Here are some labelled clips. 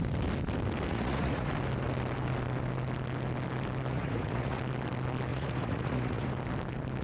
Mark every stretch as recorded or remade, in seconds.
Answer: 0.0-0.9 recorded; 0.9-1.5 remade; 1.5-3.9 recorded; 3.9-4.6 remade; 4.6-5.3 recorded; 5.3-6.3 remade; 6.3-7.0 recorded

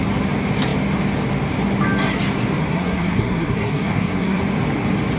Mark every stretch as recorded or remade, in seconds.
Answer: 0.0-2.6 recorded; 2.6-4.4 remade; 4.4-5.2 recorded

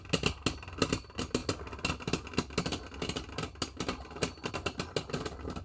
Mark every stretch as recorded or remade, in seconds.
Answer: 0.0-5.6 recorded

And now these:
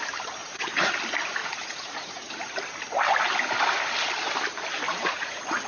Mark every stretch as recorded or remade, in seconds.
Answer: 0.0-0.4 recorded; 0.4-0.9 remade; 0.9-1.4 recorded; 1.4-2.3 remade; 2.3-4.9 recorded; 4.9-5.7 remade